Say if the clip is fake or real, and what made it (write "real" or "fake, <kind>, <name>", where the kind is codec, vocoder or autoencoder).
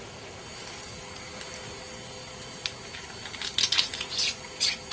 real